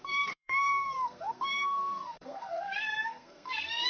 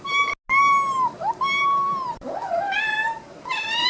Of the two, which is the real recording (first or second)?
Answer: second